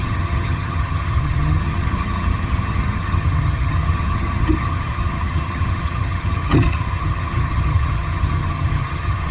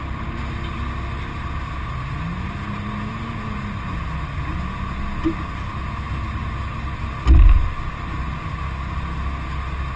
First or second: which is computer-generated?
first